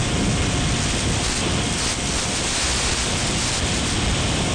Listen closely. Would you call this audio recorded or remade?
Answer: recorded